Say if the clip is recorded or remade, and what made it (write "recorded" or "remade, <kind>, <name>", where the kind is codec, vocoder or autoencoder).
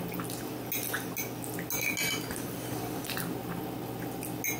recorded